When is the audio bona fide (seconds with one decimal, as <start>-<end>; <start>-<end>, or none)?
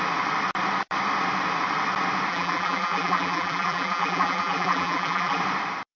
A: 0.0-2.3; 5.4-6.0